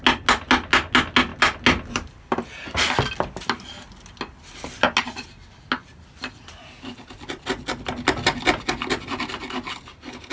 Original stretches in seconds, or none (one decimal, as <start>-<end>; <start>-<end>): 0.0-10.3

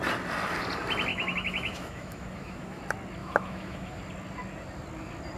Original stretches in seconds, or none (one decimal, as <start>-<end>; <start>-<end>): 0.0-1.1; 2.8-3.2; 4.0-5.4